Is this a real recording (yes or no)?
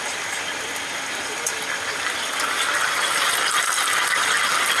yes